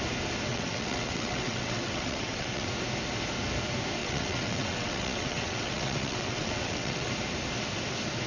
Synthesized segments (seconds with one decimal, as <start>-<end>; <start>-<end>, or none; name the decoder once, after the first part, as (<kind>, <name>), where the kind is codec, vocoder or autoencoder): 0.5-2.7 (vocoder, WaveNeXt); 4.0-7.1